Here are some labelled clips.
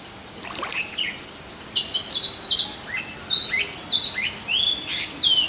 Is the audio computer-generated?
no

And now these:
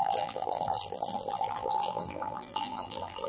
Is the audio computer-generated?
yes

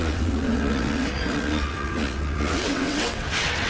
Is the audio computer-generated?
yes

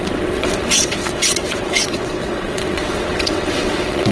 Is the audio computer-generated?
yes